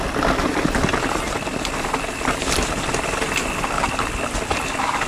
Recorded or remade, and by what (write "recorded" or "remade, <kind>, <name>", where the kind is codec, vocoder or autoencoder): recorded